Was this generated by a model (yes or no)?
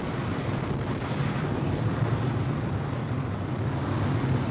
no